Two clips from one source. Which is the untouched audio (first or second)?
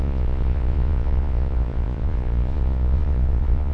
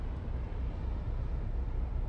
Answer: second